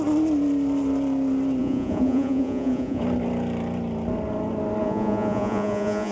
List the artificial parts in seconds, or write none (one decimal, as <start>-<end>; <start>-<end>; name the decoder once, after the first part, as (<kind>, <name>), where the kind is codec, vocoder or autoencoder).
1.6-3.0 (vocoder, Vocos); 4.8-6.1